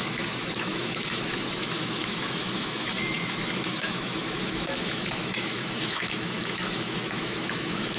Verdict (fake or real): fake